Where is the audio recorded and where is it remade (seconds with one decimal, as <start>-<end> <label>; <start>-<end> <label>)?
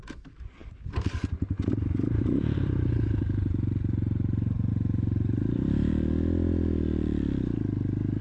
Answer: 0.0-5.9 remade; 5.9-8.2 recorded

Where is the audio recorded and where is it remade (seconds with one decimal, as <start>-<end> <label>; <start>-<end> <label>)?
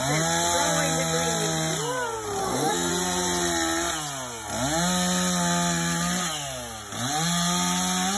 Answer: 0.0-2.4 recorded; 2.4-2.9 remade; 2.9-8.2 recorded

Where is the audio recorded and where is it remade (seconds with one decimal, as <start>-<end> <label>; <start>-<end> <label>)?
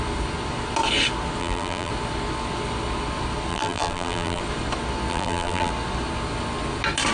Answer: 0.0-1.4 recorded; 1.4-1.9 remade; 1.9-3.5 recorded; 3.5-4.4 remade; 4.4-5.1 recorded; 5.1-5.7 remade; 5.7-7.1 recorded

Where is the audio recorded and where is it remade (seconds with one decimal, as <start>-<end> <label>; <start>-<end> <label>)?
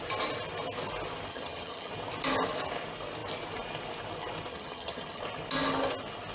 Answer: 0.0-1.3 recorded; 1.3-1.9 remade; 1.9-4.5 recorded; 4.5-5.2 remade; 5.2-6.3 recorded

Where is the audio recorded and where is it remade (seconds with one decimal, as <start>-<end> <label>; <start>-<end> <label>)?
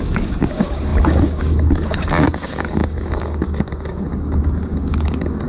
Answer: 0.0-5.5 remade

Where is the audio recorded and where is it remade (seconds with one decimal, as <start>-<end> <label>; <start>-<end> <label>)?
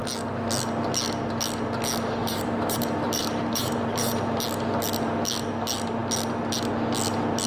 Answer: 0.0-2.2 recorded; 2.2-4.3 remade; 4.3-7.5 recorded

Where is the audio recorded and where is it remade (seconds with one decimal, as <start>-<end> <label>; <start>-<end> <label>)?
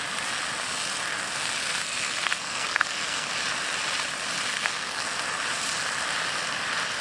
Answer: 0.0-1.6 recorded; 1.6-3.3 remade; 3.3-4.5 recorded; 4.5-5.0 remade; 5.0-7.0 recorded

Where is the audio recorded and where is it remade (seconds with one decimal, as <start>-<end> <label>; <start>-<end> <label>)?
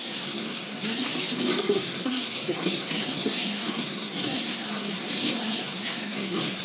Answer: 0.0-1.1 remade; 1.1-1.6 recorded; 1.6-6.6 remade